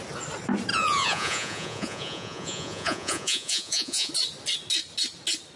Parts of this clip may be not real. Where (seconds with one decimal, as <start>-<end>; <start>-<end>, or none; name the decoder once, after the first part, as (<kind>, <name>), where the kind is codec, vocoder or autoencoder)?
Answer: 0.7-4.1 (vocoder, Vocos)

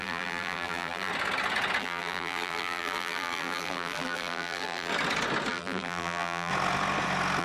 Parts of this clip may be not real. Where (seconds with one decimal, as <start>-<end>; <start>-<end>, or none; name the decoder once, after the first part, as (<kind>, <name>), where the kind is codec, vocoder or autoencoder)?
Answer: 0.0-1.1 (vocoder, BigVGAN v2); 1.8-4.9; 5.5-6.5

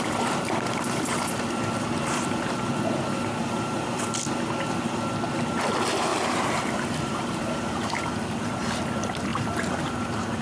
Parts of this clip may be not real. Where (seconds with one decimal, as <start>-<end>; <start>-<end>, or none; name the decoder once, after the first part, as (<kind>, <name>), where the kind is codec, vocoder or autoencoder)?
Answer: 3.4-4.0 (vocoder, BigVGAN v2); 6.1-8.0; 9.3-10.4

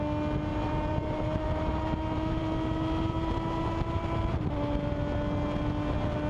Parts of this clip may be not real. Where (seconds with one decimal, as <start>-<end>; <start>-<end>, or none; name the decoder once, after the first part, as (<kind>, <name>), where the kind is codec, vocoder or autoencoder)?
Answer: 0.5-4.3 (vocoder, BigVGAN v2)

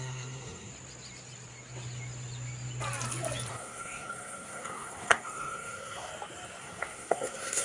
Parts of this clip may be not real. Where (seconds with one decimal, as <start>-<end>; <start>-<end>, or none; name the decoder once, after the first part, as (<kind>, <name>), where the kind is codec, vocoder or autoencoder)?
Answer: 0.0-0.7 (codec, SNAC); 3.5-6.1; 6.6-7.6

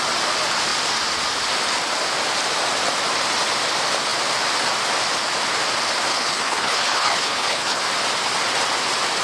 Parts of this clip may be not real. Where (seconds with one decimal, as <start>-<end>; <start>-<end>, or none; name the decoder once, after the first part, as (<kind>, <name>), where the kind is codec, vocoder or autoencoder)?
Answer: 6.1-7.8 (codec, HILCodec)